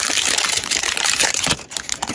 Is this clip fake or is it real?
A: fake